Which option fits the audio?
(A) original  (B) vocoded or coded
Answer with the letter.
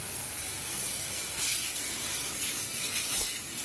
B